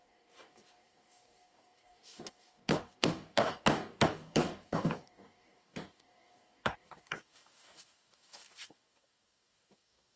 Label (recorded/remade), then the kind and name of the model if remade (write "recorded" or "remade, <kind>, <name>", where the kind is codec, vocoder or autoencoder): remade, codec, DAC